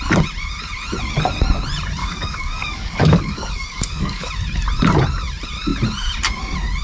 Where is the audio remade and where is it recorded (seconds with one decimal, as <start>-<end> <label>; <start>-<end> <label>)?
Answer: 0.0-2.0 recorded; 2.0-4.3 remade; 4.3-6.8 recorded